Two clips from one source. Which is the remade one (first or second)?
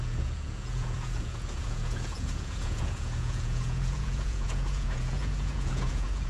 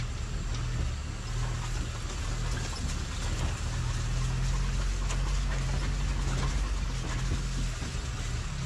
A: first